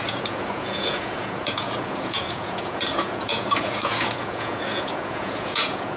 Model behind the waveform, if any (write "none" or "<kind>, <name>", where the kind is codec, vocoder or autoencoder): vocoder, Vocos